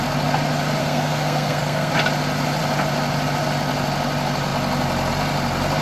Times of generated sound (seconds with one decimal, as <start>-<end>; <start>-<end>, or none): 0.8-1.9